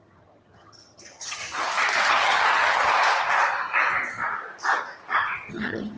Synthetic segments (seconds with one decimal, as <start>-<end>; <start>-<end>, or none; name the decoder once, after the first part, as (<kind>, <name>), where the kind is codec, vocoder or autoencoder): 0.0-1.4 (vocoder, HiFi-GAN); 2.1-2.8; 5.5-6.0